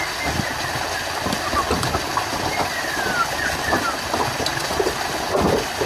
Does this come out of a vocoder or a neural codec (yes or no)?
no